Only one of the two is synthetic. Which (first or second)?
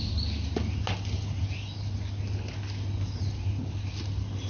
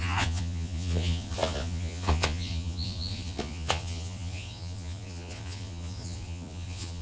second